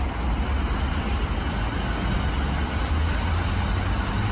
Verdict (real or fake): real